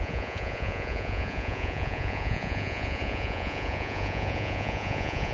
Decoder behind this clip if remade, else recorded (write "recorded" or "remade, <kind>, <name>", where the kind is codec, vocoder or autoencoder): remade, vocoder, Vocos